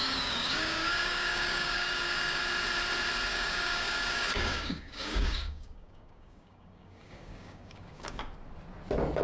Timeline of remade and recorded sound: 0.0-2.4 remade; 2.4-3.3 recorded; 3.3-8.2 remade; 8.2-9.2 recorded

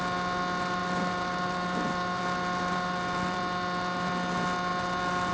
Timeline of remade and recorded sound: 0.0-0.8 recorded; 0.8-3.4 remade; 3.4-4.7 recorded; 4.7-5.3 remade

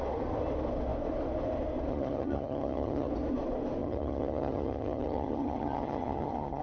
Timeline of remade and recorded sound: 0.0-1.9 recorded; 1.9-3.1 remade; 3.1-3.8 recorded; 3.8-6.6 remade

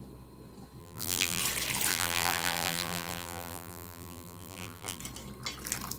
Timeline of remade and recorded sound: 0.0-0.8 recorded; 0.8-1.4 remade; 1.4-1.9 recorded; 1.9-5.0 remade; 5.0-6.0 recorded

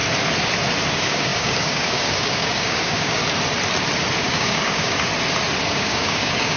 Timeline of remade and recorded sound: 0.0-0.9 recorded; 0.9-3.2 remade; 3.2-4.2 recorded; 4.2-5.1 remade; 5.1-5.7 recorded; 5.7-6.6 remade

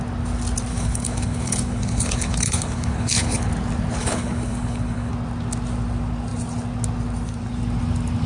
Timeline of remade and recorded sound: 0.0-0.7 recorded; 0.7-3.5 remade; 3.5-4.0 recorded; 4.0-5.1 remade; 5.1-8.3 recorded

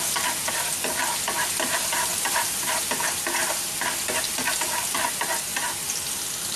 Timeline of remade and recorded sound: 0.0-2.1 recorded; 2.1-2.7 remade; 2.7-6.6 recorded

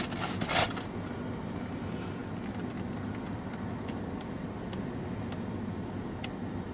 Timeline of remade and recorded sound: 0.0-6.7 recorded